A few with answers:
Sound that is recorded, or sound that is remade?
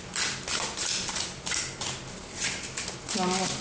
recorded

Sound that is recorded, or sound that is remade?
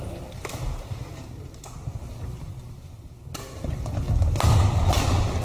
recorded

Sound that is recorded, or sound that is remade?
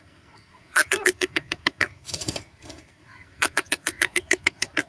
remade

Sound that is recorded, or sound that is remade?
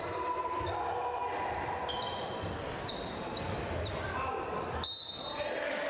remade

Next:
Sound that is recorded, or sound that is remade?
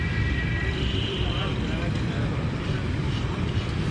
remade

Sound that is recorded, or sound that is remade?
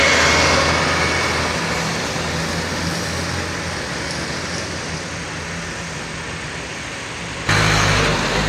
recorded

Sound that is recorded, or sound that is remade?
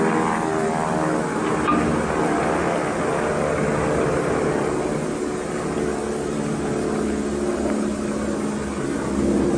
recorded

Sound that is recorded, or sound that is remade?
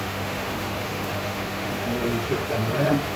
remade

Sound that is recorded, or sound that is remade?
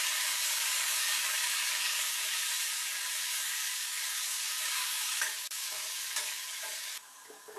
remade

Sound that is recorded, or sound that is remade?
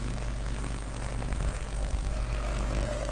remade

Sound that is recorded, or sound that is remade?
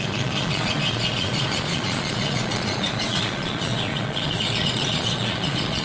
remade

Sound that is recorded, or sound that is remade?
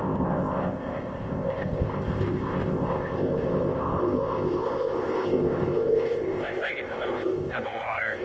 remade